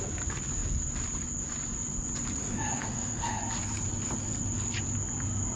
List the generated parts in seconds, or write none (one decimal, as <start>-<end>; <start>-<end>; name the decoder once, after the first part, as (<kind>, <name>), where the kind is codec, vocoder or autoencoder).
2.4-3.4 (autoencoder, DAC-VAE)

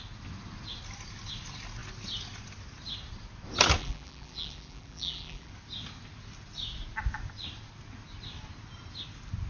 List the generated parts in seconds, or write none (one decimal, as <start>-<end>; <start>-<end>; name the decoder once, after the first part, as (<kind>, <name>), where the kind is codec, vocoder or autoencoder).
3.8-5.5 (vocoder, BigVGAN v2)

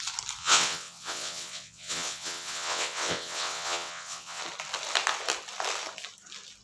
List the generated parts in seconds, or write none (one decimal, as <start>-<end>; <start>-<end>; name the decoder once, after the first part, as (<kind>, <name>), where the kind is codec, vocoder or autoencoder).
0.4-4.4 (vocoder, WaveNeXt)

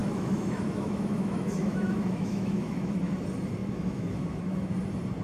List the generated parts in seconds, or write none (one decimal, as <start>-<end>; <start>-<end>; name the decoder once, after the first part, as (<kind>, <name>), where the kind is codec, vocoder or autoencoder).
0.0-3.1 (autoencoder, DAC-VAE); 3.6-4.7

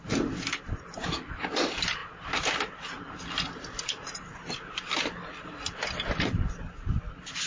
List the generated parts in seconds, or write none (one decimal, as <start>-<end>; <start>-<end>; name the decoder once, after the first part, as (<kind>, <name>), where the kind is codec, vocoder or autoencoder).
none